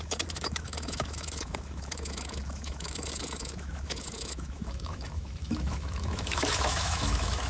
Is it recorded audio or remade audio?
remade